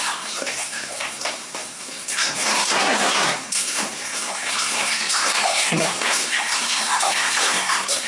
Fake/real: fake